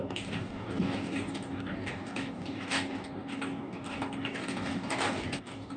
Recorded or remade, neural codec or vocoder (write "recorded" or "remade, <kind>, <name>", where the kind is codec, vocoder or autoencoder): remade, codec, DAC